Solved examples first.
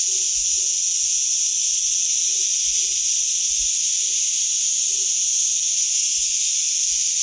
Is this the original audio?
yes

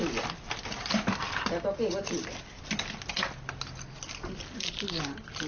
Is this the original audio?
yes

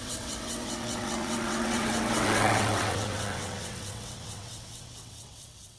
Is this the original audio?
no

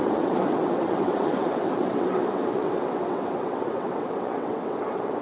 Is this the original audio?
no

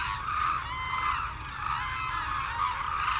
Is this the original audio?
yes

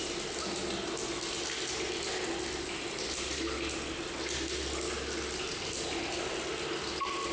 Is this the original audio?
yes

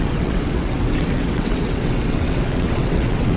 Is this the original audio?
no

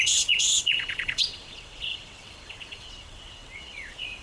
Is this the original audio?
no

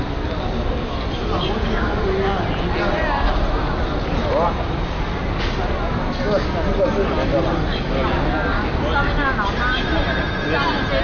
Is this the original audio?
yes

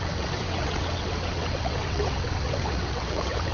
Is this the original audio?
no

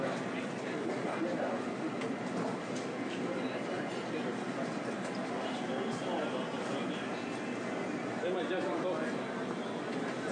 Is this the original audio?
yes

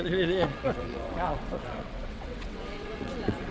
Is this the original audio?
no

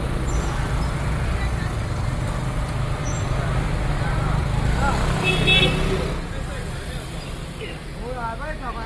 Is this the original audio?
yes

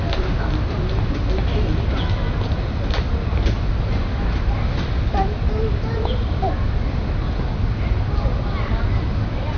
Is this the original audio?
yes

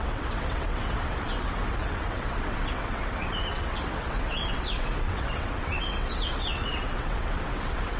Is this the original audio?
no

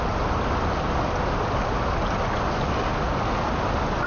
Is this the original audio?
yes